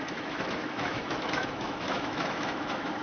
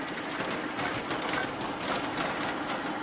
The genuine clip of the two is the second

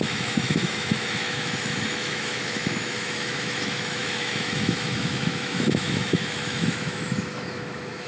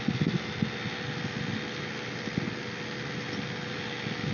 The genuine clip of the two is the second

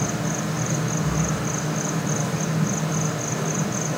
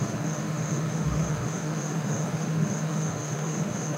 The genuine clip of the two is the first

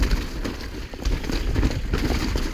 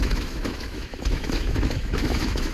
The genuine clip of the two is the first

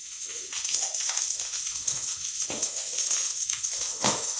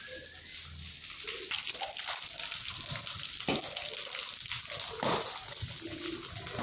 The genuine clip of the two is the second